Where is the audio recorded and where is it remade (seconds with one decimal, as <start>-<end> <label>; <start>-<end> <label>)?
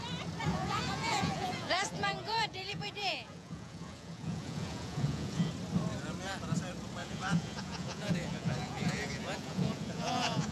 0.0-0.5 recorded; 0.5-5.5 remade; 5.5-7.0 recorded; 7.0-10.5 remade